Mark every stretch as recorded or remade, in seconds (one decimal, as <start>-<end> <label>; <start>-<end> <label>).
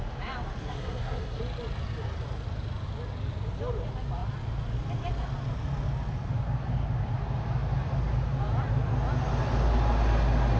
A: 0.0-0.6 recorded; 0.6-1.4 remade; 1.4-10.6 recorded